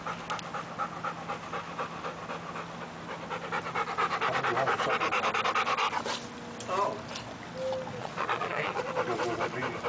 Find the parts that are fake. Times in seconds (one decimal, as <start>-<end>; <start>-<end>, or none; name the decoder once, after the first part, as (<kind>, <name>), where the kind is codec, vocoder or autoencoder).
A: 7.9-8.9 (vocoder, Vocos)